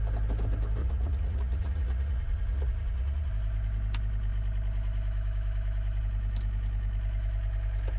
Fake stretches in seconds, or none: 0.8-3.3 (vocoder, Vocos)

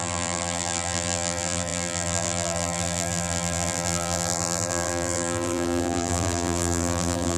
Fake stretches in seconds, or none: 0.0-7.4 (vocoder, BigVGAN v2)

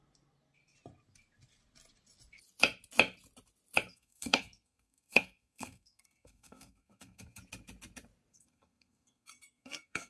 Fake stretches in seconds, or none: 3.9-7.4 (codec, SNAC); 8.3-10.1

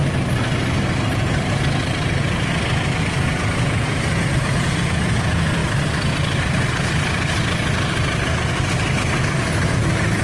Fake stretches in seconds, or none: 3.0-5.6 (vocoder, Vocos); 9.7-10.2

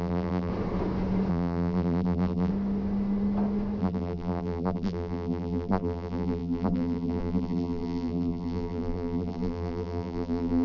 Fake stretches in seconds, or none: 0.0-0.5 (vocoder, BigVGAN v2); 1.3-2.5; 3.8-10.6

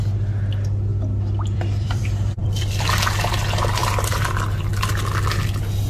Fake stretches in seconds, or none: 0.9-2.0 (vocoder, BigVGAN v2); 3.8-4.7